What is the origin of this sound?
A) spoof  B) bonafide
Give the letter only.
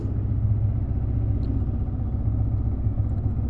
B